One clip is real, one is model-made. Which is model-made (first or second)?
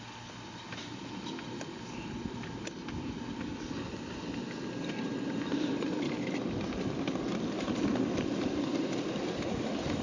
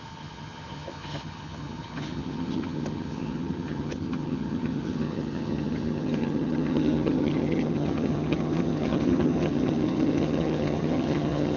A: second